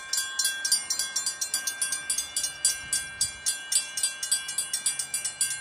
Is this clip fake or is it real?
real